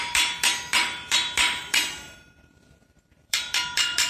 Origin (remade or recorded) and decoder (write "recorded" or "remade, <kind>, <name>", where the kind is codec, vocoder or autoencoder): remade, vocoder, BigVGAN v2